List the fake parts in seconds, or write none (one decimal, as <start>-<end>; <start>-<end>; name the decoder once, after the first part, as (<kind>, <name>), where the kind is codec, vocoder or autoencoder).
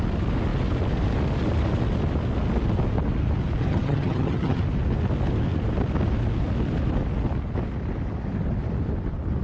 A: 3.6-4.6 (vocoder, HiFi-GAN)